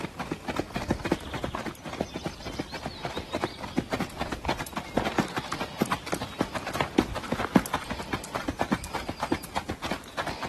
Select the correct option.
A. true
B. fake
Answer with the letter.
A